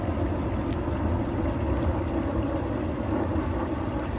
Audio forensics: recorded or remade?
recorded